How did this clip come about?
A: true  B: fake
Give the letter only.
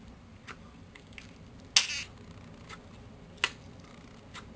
A